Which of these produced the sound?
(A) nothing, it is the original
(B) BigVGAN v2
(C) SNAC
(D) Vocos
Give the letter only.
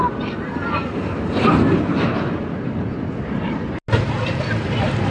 A